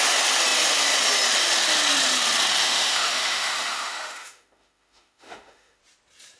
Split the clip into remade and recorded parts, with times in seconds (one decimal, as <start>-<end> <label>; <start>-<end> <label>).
0.0-2.6 recorded; 2.6-5.8 remade; 5.8-6.4 recorded